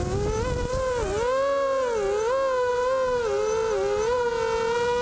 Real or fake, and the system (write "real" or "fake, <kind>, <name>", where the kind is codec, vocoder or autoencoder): real